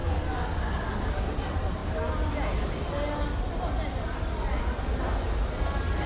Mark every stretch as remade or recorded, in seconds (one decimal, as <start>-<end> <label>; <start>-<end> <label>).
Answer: 0.0-1.1 remade; 1.1-6.1 recorded